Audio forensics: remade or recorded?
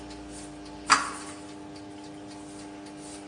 recorded